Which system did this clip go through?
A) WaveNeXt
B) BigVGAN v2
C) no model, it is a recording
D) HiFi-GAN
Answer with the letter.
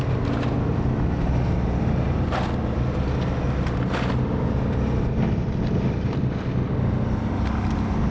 C